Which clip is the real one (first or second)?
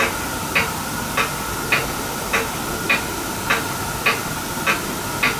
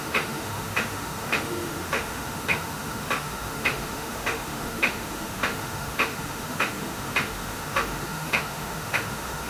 first